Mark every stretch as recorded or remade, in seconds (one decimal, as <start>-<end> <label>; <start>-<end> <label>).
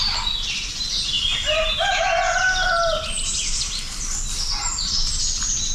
0.0-5.7 recorded